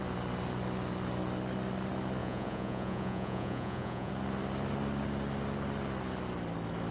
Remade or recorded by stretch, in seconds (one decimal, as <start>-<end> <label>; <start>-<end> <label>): 0.0-2.2 recorded; 2.2-4.1 remade; 4.1-6.9 recorded